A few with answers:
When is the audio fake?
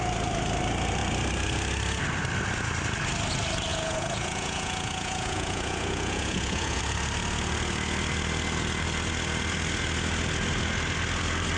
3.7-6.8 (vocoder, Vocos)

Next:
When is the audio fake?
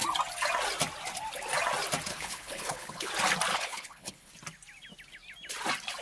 2.1-3.1 (codec, HILCodec); 3.5-4.3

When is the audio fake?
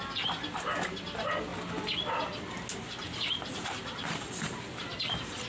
none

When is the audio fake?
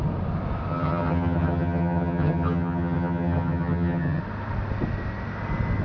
0.7-4.2 (vocoder, HiFi-GAN)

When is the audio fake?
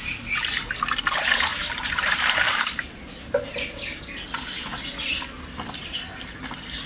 1.5-3.3 (vocoder, BigVGAN v2)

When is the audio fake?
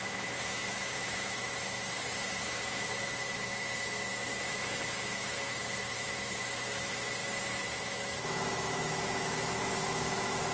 0.0-10.5 (autoencoder, DAC-VAE)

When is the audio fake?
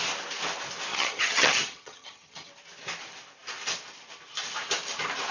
0.9-2.5 (vocoder, HiFi-GAN)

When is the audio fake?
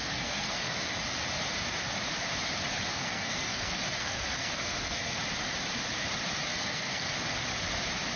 0.0-1.0 (codec, SNAC); 2.9-5.2; 6.5-7.1